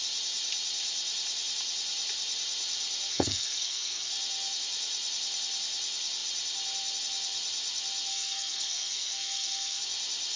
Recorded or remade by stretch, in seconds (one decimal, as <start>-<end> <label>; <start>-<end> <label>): 0.0-3.1 recorded; 3.1-4.1 remade; 4.1-8.1 recorded; 8.1-9.8 remade; 9.8-10.4 recorded